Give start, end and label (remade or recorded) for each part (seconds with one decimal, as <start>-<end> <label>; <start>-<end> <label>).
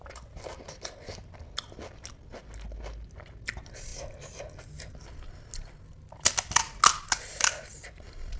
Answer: 0.0-8.4 recorded